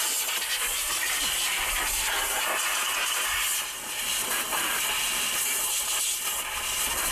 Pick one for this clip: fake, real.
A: real